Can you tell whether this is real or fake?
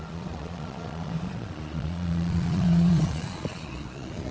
fake